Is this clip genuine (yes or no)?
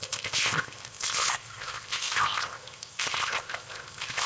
no